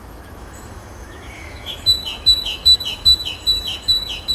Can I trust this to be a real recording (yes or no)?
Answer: no